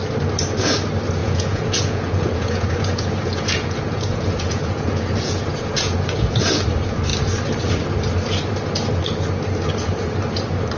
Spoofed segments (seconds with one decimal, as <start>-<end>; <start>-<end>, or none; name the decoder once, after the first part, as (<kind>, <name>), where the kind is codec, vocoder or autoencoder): 1.2-6.4 (vocoder, Vocos)